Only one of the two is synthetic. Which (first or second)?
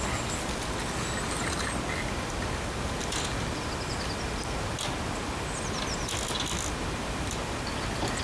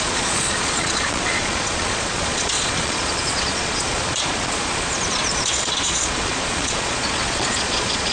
second